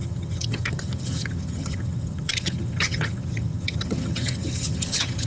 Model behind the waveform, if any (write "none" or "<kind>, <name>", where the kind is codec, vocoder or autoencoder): vocoder, HiFi-GAN